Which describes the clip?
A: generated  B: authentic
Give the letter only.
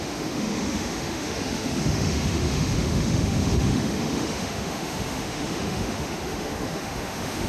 A